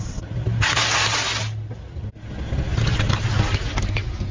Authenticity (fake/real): real